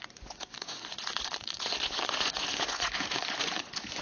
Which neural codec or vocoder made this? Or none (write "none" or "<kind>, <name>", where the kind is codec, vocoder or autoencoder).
vocoder, Vocos